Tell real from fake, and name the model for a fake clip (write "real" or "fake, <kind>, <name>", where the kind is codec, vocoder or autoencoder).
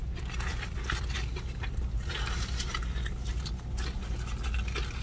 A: real